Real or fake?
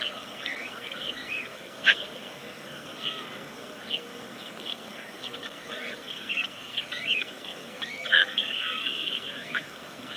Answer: fake